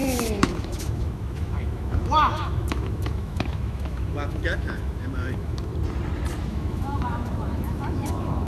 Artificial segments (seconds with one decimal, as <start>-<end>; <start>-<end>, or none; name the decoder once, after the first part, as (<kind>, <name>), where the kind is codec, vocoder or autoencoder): 0.0-5.7 (autoencoder, DAC-VAE); 6.4-8.5